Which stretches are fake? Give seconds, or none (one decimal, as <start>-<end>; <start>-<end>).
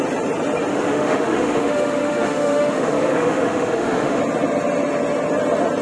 0.7-4.2